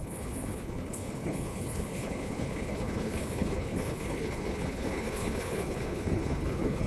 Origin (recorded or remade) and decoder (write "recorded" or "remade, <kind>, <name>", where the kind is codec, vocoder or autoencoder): remade, codec, HILCodec